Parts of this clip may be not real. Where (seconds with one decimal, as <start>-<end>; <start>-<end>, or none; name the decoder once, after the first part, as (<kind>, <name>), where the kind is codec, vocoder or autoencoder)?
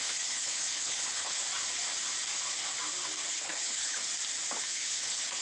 0.0-1.4 (codec, HILCodec); 3.3-4.0; 4.6-5.4